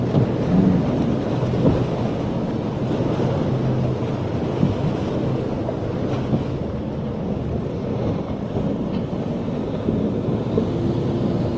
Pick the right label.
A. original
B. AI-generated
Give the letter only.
A